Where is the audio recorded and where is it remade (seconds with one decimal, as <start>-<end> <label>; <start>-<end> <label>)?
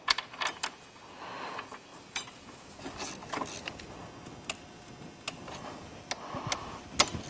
0.0-1.9 recorded; 1.9-2.8 remade; 2.8-7.3 recorded